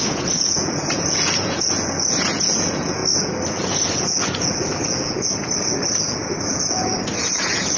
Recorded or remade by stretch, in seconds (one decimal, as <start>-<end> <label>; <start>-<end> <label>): 0.0-3.0 remade; 3.0-3.5 recorded; 3.5-7.8 remade

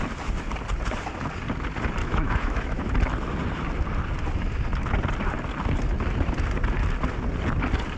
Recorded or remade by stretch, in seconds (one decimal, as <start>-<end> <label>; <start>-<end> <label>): 0.0-2.0 recorded; 2.0-2.9 remade; 2.9-8.0 recorded

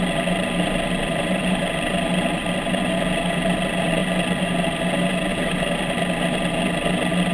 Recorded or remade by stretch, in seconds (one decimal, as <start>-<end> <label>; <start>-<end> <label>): 0.0-1.0 recorded; 1.0-1.6 remade; 1.6-5.3 recorded; 5.3-5.9 remade; 5.9-7.3 recorded

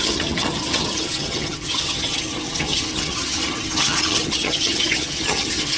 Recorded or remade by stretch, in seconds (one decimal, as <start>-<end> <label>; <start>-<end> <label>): 0.0-5.8 remade

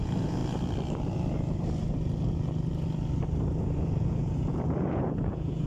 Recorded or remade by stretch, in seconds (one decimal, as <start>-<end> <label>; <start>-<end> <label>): 0.0-0.4 remade; 0.4-3.6 recorded; 3.6-5.7 remade